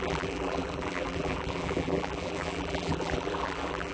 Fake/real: fake